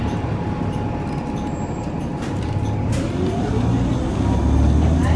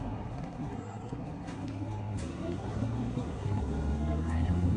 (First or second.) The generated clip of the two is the second